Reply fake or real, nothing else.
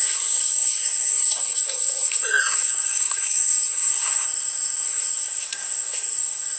fake